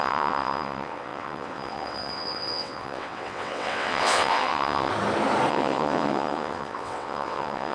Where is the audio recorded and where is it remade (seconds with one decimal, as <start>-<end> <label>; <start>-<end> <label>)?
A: 0.0-4.9 remade; 4.9-5.5 recorded; 5.5-7.7 remade